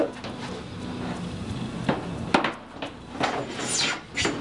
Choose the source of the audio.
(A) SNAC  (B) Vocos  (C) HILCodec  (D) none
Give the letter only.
D